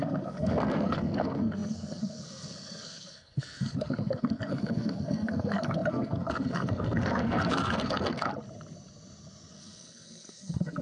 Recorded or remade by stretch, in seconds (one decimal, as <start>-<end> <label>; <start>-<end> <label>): 0.0-8.3 remade; 8.3-9.5 recorded; 9.5-10.8 remade